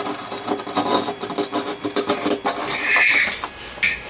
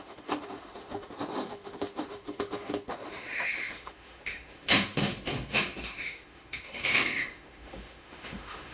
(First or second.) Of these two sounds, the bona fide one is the first